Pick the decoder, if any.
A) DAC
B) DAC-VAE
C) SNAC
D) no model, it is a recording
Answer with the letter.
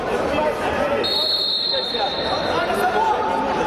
D